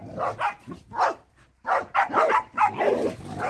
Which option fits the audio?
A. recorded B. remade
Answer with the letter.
A